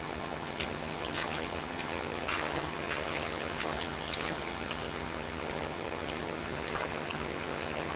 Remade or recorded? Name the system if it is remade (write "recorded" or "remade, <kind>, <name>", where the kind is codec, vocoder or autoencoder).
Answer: remade, vocoder, HiFi-GAN